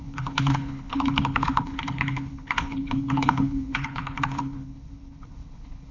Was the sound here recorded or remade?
remade